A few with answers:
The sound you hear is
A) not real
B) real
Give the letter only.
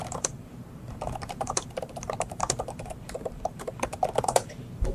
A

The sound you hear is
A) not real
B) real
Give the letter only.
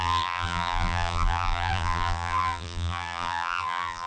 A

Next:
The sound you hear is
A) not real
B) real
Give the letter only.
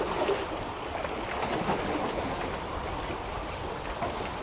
B